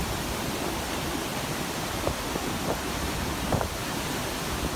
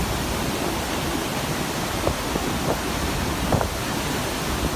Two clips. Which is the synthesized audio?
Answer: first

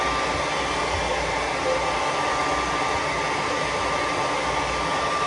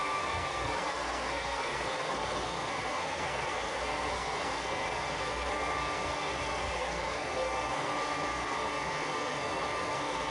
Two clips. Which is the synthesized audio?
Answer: second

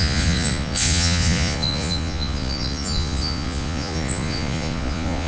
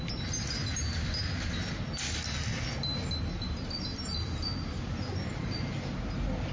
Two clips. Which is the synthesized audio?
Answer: first